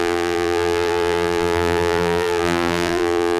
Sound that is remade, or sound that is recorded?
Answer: remade